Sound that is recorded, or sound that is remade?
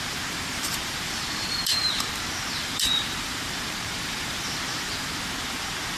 remade